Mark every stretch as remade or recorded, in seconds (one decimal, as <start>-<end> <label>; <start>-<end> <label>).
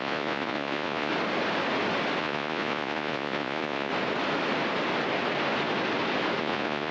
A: 0.0-1.1 remade; 1.1-2.2 recorded; 2.2-3.9 remade; 3.9-6.4 recorded; 6.4-6.9 remade